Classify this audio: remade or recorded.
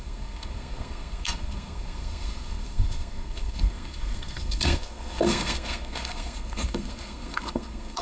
remade